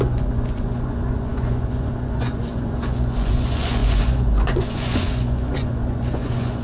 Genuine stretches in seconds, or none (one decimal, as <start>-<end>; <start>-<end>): none